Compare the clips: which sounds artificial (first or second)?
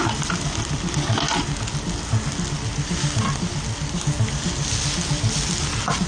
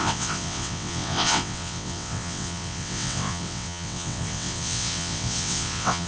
second